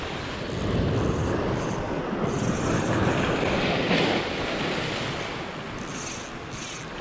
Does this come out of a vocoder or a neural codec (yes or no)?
no